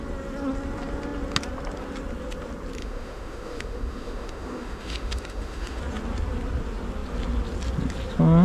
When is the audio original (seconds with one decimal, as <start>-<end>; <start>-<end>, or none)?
0.0-2.8; 5.8-8.4

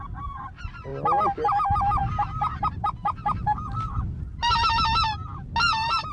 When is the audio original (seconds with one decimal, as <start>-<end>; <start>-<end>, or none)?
0.0-6.1

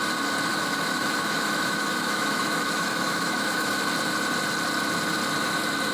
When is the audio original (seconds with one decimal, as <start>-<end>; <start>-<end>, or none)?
0.0-0.5; 3.8-5.9

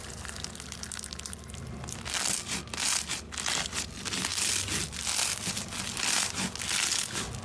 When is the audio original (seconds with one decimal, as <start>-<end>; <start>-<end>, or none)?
0.0-7.4

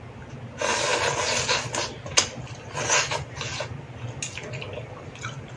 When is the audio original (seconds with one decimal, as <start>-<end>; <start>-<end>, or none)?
0.0-5.6